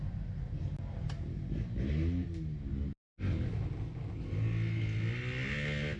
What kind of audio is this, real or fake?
real